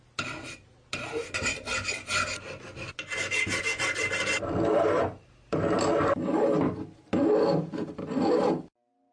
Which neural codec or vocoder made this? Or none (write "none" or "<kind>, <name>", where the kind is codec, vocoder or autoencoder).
none